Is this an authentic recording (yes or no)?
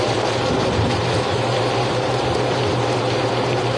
yes